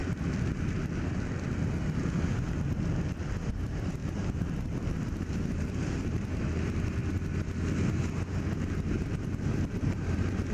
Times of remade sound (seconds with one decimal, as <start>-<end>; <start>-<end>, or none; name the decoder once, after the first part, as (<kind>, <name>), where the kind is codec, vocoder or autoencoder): 3.5-7.0 (vocoder, BigVGAN v2); 8.9-10.5